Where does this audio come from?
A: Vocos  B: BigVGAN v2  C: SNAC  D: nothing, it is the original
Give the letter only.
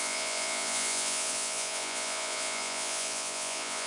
A